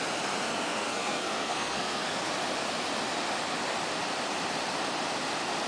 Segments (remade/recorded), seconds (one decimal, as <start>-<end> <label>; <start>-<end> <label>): 0.0-0.5 recorded; 0.5-2.3 remade; 2.3-5.7 recorded